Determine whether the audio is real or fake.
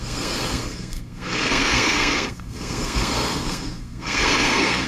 fake